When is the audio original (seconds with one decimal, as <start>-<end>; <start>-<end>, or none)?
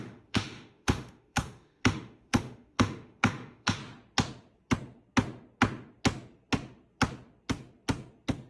3.8-8.5